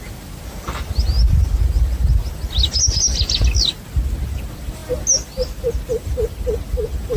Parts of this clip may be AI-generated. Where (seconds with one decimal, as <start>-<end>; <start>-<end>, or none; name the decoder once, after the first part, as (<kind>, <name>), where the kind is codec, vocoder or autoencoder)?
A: none